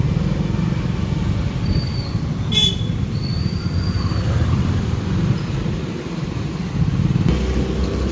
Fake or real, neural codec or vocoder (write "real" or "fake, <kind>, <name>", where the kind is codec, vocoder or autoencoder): real